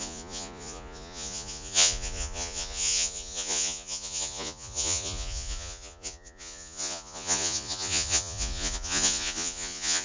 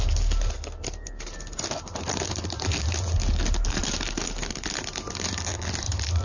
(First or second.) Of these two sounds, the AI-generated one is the first